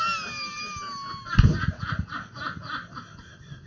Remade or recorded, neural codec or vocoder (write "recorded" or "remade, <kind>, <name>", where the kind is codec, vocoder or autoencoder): recorded